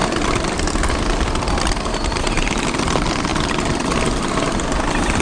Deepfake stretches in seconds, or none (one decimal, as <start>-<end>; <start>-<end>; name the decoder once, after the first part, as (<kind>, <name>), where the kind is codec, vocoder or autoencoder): none